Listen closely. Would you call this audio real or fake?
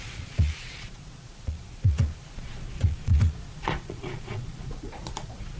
fake